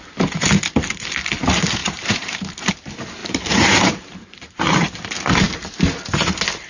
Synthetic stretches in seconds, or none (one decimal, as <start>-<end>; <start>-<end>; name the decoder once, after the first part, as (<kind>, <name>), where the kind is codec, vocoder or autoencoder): 1.8-2.7 (vocoder, BigVGAN v2); 3.2-4.6